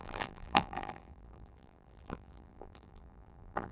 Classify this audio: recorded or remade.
remade